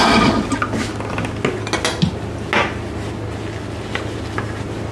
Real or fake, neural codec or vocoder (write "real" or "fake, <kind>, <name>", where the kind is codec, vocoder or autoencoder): real